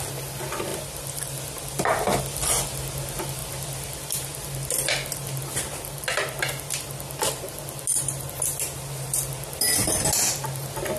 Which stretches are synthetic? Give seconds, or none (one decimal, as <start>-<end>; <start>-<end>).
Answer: none